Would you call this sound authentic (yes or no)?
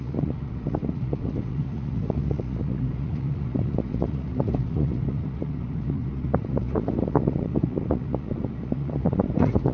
no